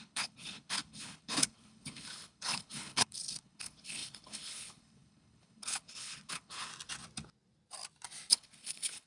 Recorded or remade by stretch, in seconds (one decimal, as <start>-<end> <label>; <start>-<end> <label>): 0.0-6.7 remade; 6.7-8.3 recorded; 8.3-9.1 remade